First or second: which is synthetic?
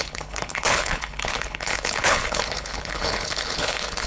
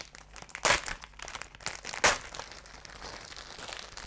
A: first